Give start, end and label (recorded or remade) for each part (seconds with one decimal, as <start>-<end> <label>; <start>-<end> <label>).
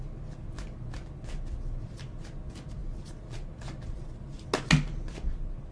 0.0-5.7 recorded